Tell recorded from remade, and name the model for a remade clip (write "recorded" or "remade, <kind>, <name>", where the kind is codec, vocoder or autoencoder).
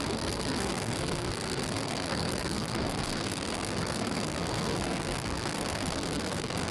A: remade, codec, SNAC